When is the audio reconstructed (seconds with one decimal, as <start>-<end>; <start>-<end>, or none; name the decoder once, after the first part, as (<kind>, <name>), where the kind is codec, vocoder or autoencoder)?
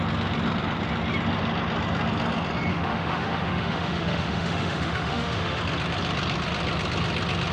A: 2.7-5.6 (autoencoder, DAC-VAE)